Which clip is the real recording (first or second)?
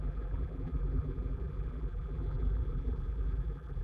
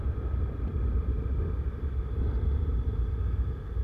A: second